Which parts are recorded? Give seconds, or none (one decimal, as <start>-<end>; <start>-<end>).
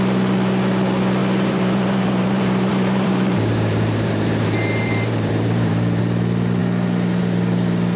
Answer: 0.0-1.2; 6.0-8.0